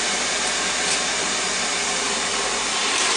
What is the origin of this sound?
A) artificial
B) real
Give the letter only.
A